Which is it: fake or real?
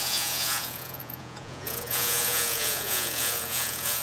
fake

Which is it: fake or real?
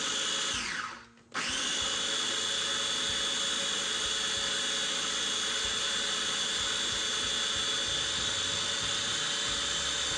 real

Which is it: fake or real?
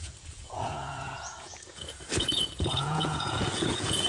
fake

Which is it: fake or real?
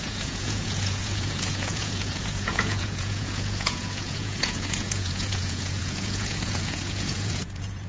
fake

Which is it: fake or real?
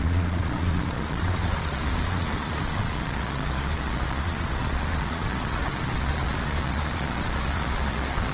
fake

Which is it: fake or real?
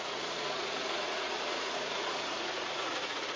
fake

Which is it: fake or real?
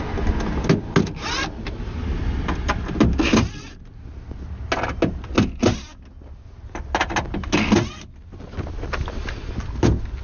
real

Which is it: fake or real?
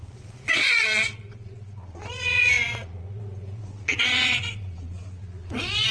fake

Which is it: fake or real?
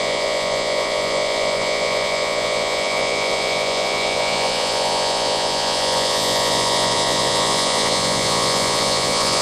fake